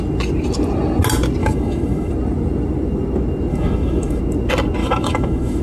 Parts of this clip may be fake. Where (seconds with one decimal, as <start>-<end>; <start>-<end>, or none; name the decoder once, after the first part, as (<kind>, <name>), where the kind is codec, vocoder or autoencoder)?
1.4-2.1 (autoencoder, DAC-VAE); 3.5-4.2; 4.8-5.6